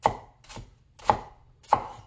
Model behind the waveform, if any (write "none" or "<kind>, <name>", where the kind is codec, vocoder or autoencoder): none